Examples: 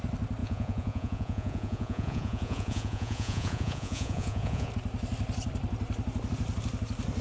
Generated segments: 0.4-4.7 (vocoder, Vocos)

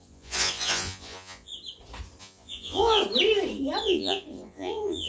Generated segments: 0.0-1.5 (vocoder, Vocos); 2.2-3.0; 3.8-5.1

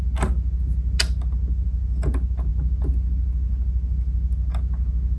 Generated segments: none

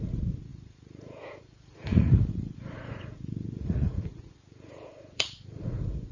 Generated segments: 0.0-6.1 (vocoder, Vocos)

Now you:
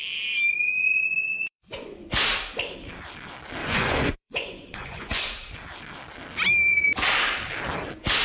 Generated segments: 0.5-2.1 (vocoder, Vocos); 3.6-5.5

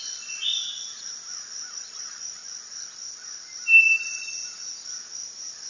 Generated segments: 0.0-0.6 (vocoder, Vocos); 1.7-2.4; 3.9-4.4